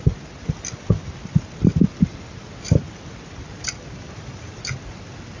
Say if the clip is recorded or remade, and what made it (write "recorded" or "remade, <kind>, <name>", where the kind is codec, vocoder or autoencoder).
recorded